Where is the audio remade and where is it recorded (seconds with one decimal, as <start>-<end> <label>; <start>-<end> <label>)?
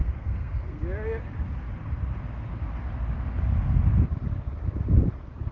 0.0-0.8 remade; 0.8-5.5 recorded